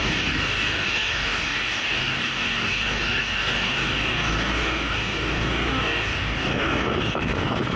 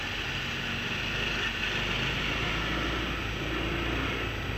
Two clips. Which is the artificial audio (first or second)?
first